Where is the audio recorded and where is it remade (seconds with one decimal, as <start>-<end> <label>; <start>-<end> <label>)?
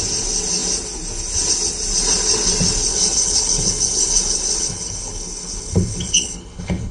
0.0-2.9 recorded; 2.9-6.9 remade